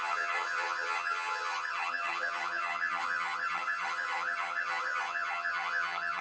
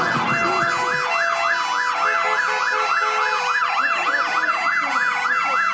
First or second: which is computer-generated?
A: first